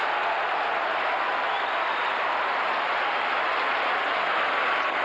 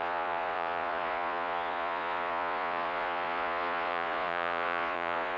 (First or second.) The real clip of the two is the first